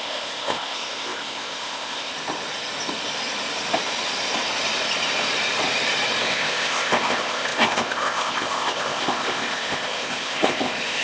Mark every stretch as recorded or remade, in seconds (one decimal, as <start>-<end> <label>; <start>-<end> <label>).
0.0-2.1 remade; 2.1-6.2 recorded; 6.2-11.0 remade